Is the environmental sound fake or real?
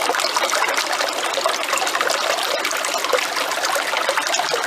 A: real